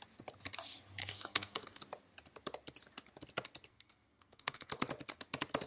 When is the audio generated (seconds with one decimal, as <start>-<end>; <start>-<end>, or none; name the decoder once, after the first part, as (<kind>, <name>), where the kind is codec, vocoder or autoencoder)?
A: 1.0-1.8 (codec, SNAC); 3.7-4.7